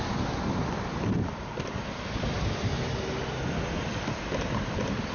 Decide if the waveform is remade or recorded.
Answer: recorded